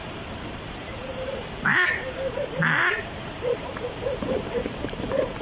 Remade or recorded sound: remade